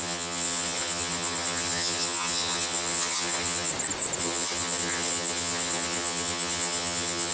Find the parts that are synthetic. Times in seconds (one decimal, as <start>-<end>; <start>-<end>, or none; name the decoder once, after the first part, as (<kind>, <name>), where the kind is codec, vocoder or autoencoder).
0.0-3.7 (vocoder, HiFi-GAN); 4.2-7.3